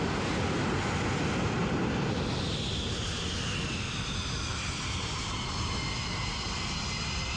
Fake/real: real